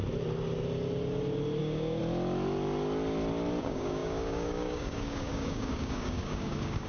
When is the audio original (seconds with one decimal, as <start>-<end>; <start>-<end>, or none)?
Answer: 0.0-1.6; 2.0-3.6